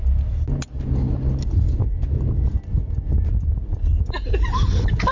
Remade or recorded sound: recorded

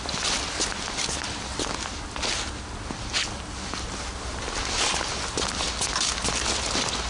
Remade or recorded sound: recorded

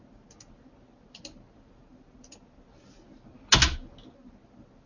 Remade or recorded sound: recorded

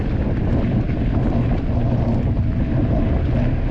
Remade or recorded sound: recorded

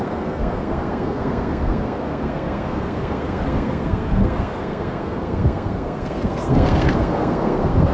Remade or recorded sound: remade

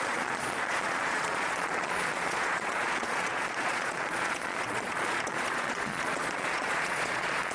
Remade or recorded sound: remade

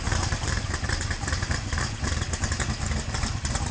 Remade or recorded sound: remade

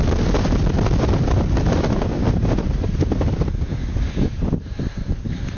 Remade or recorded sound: recorded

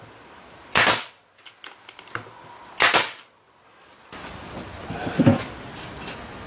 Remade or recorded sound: recorded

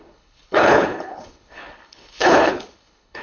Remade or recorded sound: remade